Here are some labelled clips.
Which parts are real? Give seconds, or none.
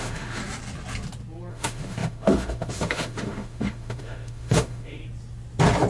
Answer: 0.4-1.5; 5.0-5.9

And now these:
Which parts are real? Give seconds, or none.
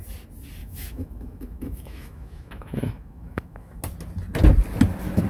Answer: 0.0-0.6; 3.8-5.3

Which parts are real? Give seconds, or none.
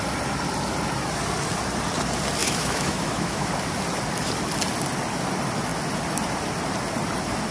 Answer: 0.0-2.4; 3.5-7.5